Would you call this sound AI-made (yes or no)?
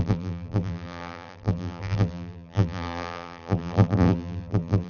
yes